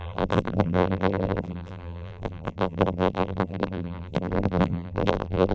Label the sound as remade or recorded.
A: remade